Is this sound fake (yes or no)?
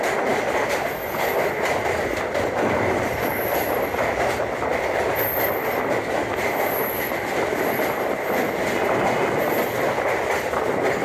no